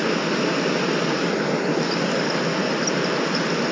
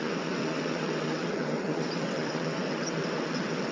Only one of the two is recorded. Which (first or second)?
first